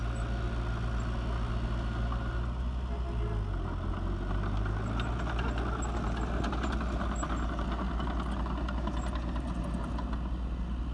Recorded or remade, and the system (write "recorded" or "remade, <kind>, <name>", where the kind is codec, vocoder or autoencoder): recorded